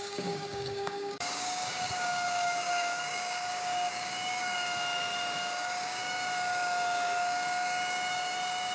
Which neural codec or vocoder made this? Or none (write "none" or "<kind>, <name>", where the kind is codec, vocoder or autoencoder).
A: codec, DAC